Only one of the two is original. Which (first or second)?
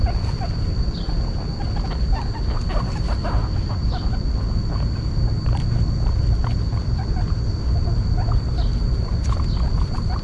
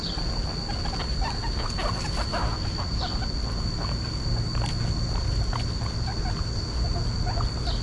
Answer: second